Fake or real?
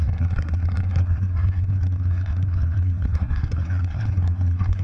fake